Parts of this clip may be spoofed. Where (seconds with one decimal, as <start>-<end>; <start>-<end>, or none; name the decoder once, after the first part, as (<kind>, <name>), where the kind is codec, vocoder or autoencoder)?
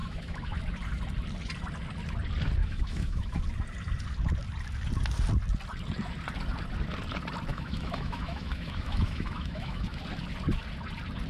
0.0-0.5 (autoencoder, DAC-VAE); 2.6-3.4; 7.5-10.0